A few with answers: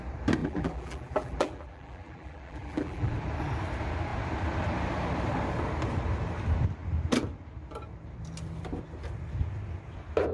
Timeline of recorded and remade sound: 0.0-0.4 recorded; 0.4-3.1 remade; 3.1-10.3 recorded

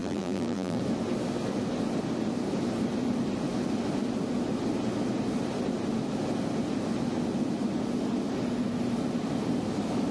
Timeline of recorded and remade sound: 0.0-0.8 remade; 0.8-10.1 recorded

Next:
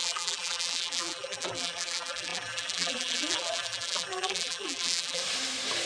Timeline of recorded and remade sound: 0.0-5.2 remade; 5.2-5.9 recorded

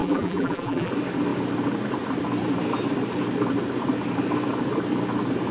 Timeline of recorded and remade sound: 0.0-0.9 remade; 0.9-5.5 recorded

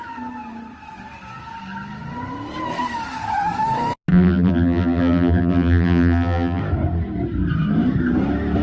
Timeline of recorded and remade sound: 0.0-4.1 recorded; 4.1-6.6 remade; 6.6-8.6 recorded